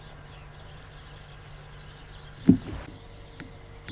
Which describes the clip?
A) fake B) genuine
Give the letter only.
B